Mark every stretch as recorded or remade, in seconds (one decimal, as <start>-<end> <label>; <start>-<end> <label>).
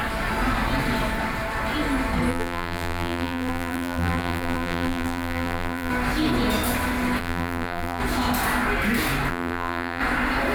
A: 0.0-2.3 recorded; 2.3-5.9 remade; 5.9-7.2 recorded; 7.2-8.0 remade; 8.0-9.3 recorded; 9.3-10.0 remade; 10.0-10.5 recorded